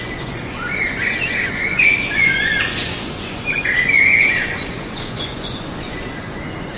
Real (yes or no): no